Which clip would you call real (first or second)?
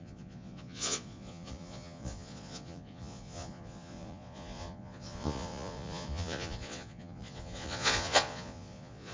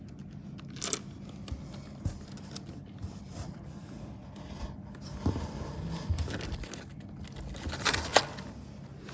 second